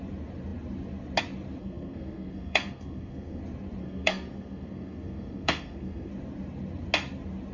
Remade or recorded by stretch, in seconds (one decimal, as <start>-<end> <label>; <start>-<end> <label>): 0.0-1.6 recorded; 1.6-3.4 remade; 3.4-3.8 recorded; 3.8-6.1 remade; 6.1-7.5 recorded